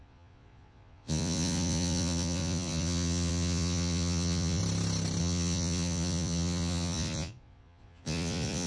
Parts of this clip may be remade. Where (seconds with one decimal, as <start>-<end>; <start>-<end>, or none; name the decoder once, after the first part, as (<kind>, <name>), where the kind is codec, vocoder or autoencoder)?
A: 0.0-4.6 (vocoder, Vocos); 5.2-8.7

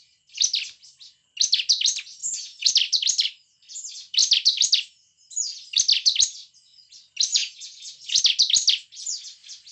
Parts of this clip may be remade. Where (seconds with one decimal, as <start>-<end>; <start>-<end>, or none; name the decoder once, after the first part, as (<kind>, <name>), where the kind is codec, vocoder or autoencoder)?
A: 2.2-2.7 (vocoder, Vocos); 7.3-8.2

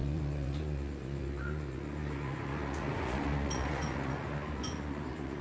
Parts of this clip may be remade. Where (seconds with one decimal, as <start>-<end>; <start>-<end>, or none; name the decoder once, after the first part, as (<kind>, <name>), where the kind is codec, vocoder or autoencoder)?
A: 0.0-5.4 (vocoder, Vocos)

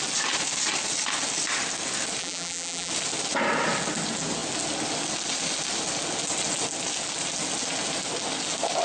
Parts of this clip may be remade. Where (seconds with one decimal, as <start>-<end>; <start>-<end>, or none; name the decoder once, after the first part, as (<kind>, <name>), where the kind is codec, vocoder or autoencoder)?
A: 2.2-2.9 (vocoder, BigVGAN v2)

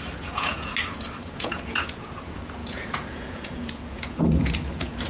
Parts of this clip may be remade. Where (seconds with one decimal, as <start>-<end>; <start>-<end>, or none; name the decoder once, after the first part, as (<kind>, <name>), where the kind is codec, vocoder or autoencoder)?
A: 0.0-0.7 (vocoder, Vocos); 1.4-5.1

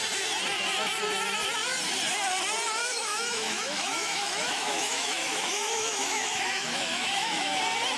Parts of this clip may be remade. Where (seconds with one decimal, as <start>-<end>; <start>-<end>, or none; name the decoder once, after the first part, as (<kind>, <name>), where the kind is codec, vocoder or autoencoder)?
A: 2.8-7.6 (autoencoder, DAC-VAE)

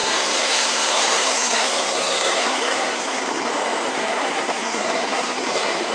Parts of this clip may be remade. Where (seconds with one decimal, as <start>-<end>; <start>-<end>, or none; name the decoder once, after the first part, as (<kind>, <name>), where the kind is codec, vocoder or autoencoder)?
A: 0.0-3.5 (codec, SNAC); 3.9-5.9